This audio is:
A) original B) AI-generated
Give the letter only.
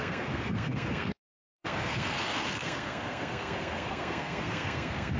B